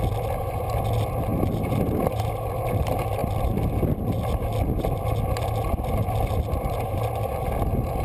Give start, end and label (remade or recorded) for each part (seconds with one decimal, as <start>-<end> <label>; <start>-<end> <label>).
0.0-8.0 recorded